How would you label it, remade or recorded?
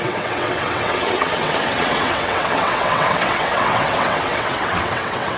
remade